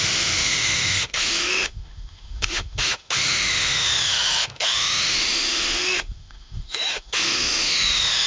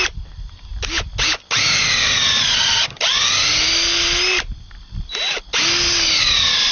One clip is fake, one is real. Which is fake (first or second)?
first